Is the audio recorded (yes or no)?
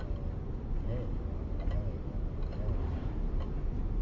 yes